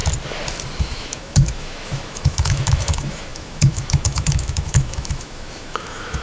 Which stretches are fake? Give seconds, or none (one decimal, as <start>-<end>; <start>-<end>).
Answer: 0.8-6.2